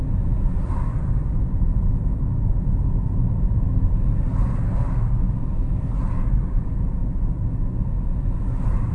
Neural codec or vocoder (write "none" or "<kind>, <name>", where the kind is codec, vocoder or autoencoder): none